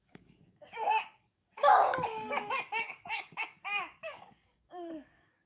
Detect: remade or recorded remade